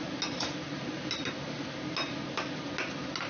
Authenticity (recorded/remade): recorded